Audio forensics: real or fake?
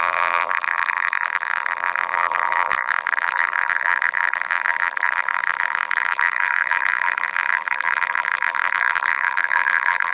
fake